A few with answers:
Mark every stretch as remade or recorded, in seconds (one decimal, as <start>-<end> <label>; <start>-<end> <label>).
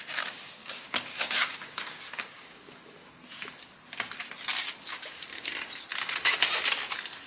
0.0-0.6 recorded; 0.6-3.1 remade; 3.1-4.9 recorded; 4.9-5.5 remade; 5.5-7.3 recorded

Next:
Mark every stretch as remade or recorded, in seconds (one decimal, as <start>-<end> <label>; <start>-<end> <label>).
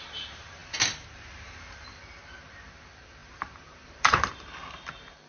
0.0-3.2 recorded; 3.2-4.3 remade; 4.3-5.3 recorded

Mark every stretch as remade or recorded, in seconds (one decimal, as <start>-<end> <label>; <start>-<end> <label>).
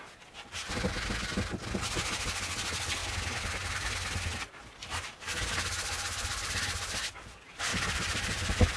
0.0-7.7 recorded; 7.7-8.8 remade